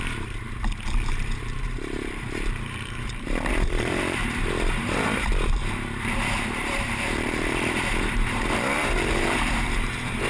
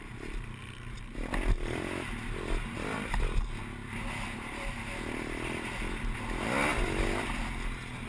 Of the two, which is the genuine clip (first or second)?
second